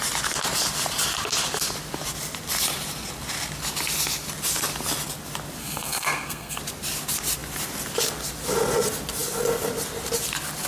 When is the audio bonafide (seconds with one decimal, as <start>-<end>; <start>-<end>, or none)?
0.0-5.6; 6.6-10.7